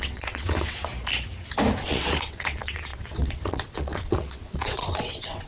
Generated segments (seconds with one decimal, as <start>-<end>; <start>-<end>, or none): 0.0-0.9; 1.8-5.5